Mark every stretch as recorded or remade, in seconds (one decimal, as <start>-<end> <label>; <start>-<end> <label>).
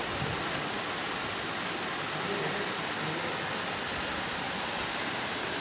0.0-5.6 recorded